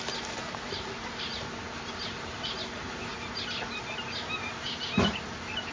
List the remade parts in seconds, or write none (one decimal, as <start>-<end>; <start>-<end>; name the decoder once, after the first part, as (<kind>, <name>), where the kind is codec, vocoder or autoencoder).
0.4-2.5 (vocoder, BigVGAN v2)